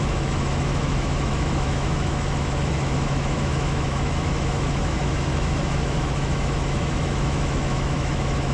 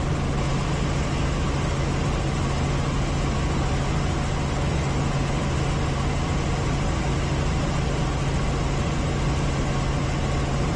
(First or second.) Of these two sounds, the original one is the second